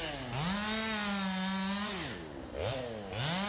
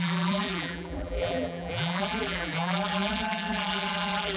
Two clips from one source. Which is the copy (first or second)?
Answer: second